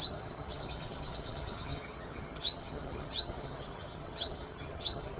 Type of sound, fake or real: fake